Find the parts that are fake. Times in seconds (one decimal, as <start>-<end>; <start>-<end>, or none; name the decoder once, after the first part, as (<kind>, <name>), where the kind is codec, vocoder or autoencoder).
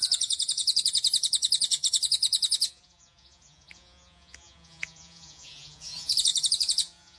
0.0-7.2 (vocoder, Vocos)